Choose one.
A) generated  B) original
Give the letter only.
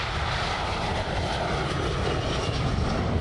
B